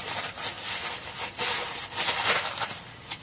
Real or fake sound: real